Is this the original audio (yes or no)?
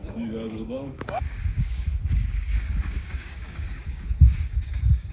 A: no